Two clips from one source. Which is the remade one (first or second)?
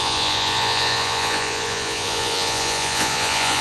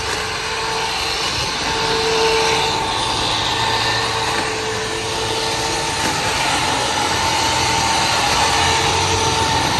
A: first